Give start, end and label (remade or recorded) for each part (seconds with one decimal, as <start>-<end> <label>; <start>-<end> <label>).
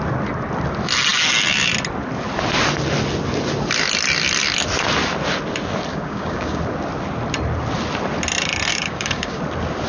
0.0-5.9 recorded; 5.9-6.6 remade; 6.6-8.7 recorded; 8.7-9.4 remade; 9.4-9.9 recorded